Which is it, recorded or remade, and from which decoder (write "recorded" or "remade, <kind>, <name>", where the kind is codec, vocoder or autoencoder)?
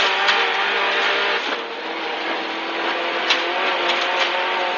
recorded